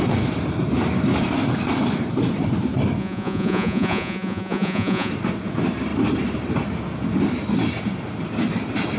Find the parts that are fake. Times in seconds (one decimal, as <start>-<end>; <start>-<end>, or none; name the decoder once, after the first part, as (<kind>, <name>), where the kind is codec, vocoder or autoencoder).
3.0-5.1 (vocoder, Vocos)